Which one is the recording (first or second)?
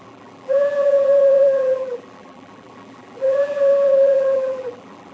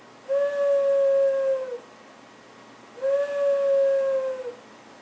second